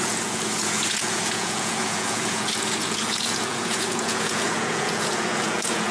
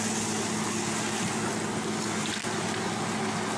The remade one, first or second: first